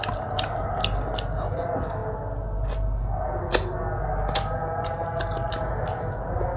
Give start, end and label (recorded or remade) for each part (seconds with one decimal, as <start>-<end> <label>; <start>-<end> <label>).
0.0-6.6 recorded